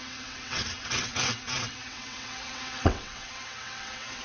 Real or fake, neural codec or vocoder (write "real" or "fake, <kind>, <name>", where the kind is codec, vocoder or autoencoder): fake, vocoder, WaveNeXt